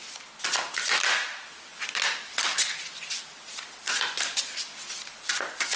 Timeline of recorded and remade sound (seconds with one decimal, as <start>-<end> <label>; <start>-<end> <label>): 0.0-5.8 recorded